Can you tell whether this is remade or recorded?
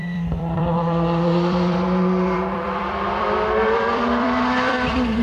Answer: remade